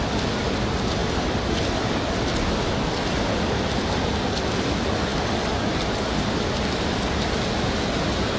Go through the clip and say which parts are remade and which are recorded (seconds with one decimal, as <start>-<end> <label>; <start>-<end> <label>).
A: 0.0-8.4 recorded